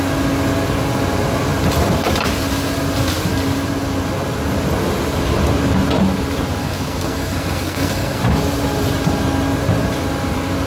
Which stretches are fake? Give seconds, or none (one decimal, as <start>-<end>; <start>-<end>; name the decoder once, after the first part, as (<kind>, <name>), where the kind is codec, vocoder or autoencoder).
6.6-8.2 (codec, SNAC)